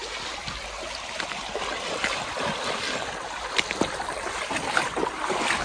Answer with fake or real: real